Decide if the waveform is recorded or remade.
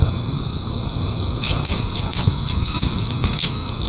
remade